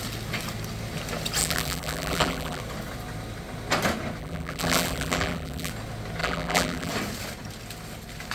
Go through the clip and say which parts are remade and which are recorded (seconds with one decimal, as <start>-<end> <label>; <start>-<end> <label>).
0.0-1.4 recorded; 1.4-2.6 remade; 2.6-4.2 recorded; 4.2-5.7 remade; 5.7-6.2 recorded; 6.2-6.9 remade; 6.9-8.3 recorded